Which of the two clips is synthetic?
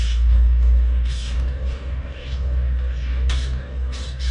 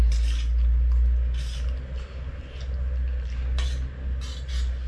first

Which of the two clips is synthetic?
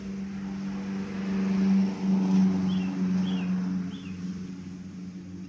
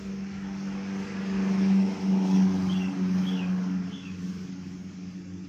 second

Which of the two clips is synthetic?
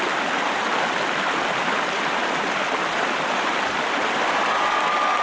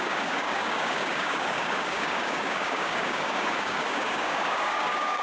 second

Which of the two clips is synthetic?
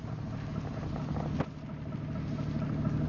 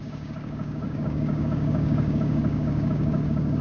second